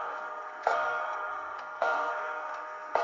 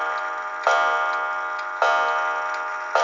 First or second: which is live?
second